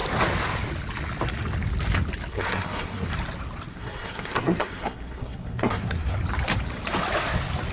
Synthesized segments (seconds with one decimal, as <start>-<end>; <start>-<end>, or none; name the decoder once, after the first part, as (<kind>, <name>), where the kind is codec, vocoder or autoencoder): 2.3-3.1 (codec, SNAC); 3.7-6.2